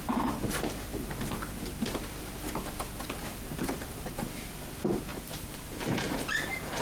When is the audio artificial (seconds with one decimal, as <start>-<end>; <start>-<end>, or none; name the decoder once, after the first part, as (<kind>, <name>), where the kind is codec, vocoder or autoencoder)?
0.0-0.9 (vocoder, BigVGAN v2); 3.2-6.8